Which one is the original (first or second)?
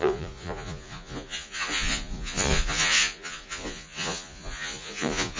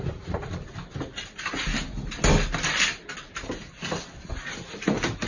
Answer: second